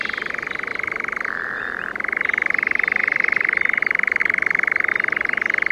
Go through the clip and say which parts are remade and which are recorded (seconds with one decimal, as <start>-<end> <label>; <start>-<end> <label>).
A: 0.0-0.7 recorded; 0.7-2.3 remade; 2.3-3.0 recorded; 3.0-3.8 remade; 3.8-4.2 recorded; 4.2-4.9 remade; 4.9-5.7 recorded